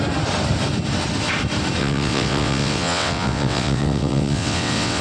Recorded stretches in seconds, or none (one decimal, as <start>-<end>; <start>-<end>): 0.0-1.8